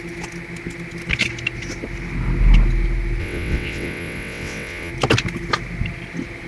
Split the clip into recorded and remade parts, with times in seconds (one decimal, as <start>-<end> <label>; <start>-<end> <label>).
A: 0.0-3.2 recorded; 3.2-4.9 remade; 4.9-6.5 recorded